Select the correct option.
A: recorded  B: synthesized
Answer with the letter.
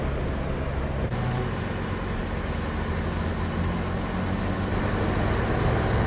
A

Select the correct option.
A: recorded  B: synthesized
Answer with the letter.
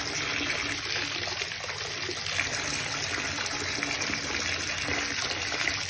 A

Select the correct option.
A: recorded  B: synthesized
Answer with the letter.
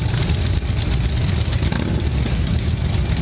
A